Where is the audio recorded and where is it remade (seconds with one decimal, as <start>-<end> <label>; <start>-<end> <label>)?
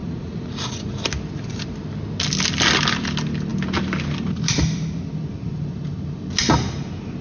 0.0-1.0 remade; 1.0-7.2 recorded